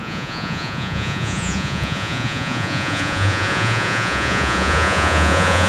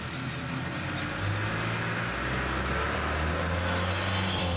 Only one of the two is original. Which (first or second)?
second